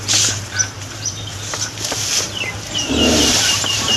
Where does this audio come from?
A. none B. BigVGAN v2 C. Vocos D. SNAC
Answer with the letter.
B